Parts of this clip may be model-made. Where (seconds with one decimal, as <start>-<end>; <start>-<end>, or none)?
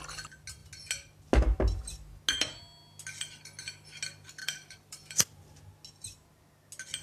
4.4-5.6